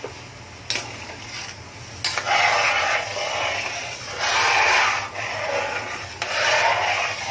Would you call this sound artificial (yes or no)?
no